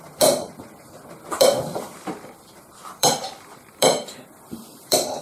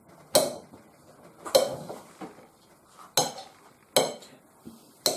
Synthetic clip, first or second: first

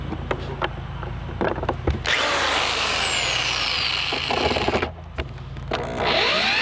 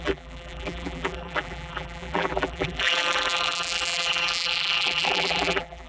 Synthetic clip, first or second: second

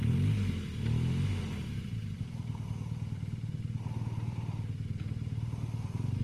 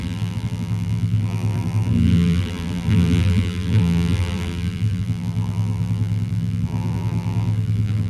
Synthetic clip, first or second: second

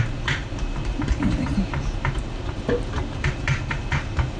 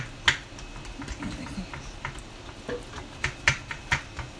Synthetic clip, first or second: first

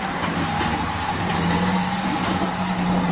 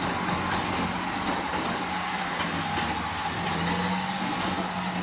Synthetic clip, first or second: first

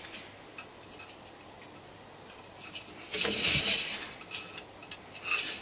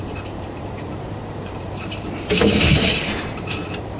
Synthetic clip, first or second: second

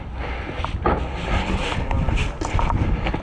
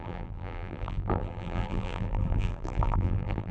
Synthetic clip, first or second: second